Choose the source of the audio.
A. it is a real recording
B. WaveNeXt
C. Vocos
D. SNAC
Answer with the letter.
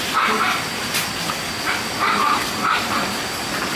A